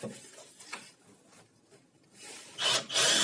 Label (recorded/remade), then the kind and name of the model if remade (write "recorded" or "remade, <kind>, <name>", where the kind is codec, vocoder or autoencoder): recorded